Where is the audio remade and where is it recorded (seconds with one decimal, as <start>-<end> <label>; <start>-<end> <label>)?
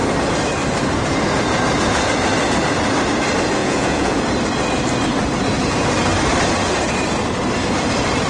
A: 0.0-3.6 recorded; 3.6-4.2 remade; 4.2-8.3 recorded